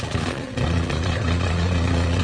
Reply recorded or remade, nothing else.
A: remade